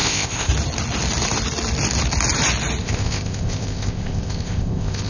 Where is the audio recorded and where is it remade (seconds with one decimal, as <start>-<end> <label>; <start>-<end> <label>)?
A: 0.0-0.5 remade; 0.5-2.8 recorded; 2.8-5.1 remade